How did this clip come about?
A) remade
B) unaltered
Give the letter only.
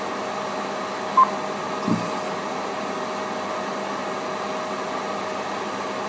B